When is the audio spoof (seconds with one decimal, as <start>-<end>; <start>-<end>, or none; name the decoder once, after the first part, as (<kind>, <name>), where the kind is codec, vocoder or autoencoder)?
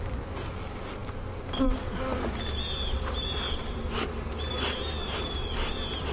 none